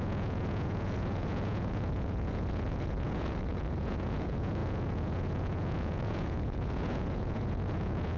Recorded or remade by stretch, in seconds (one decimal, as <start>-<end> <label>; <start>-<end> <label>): 0.0-8.2 remade